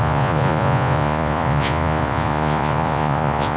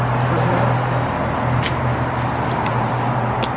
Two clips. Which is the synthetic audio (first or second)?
first